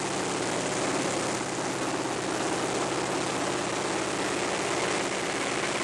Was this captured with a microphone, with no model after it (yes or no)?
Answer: yes